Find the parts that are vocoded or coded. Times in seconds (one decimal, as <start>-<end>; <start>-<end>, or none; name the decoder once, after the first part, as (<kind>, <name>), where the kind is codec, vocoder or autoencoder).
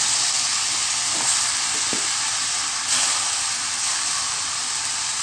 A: none